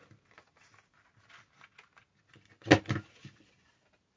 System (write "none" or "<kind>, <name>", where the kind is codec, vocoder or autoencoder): none